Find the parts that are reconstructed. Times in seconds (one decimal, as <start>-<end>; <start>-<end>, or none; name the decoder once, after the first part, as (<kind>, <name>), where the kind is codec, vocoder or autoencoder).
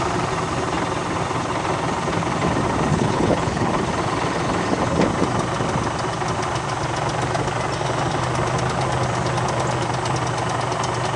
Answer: 2.9-3.7 (codec, HILCodec)